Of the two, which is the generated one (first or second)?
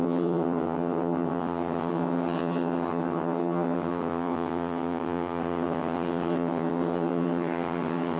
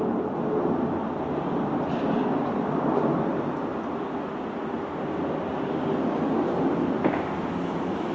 first